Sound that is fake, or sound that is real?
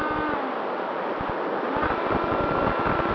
real